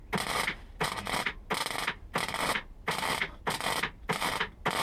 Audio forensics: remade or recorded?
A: recorded